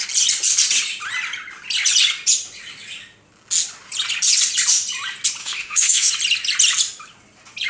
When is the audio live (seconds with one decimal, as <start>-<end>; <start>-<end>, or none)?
0.0-5.4; 6.1-7.7